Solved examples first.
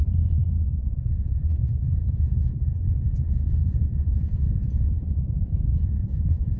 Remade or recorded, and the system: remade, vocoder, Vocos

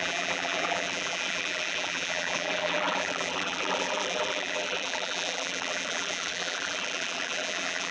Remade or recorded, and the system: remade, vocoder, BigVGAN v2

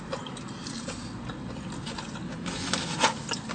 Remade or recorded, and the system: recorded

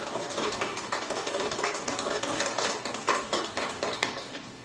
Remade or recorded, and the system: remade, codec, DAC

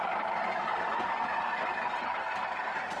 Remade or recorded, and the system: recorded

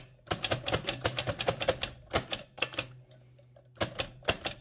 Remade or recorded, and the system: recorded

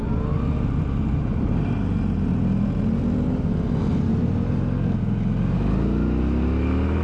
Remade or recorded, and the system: recorded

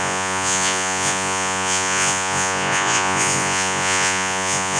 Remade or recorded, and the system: remade, vocoder, Vocos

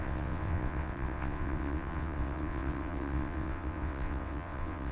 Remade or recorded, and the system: remade, vocoder, WaveNeXt